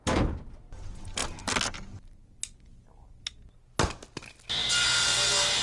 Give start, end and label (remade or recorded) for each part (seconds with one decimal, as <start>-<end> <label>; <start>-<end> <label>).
0.0-5.6 recorded